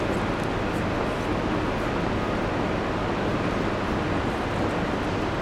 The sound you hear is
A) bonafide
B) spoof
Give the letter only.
A